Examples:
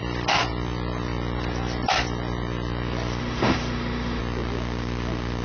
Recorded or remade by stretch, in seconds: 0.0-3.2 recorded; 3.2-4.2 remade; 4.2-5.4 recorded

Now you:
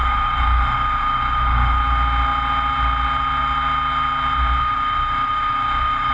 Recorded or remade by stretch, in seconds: 0.0-1.8 remade; 1.8-4.6 recorded; 4.6-6.1 remade

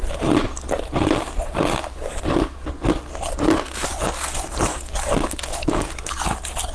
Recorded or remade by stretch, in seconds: 0.0-1.8 recorded; 1.8-2.7 remade; 2.7-4.7 recorded; 4.7-6.1 remade; 6.1-6.7 recorded

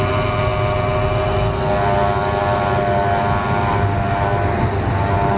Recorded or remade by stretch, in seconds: 0.0-5.4 recorded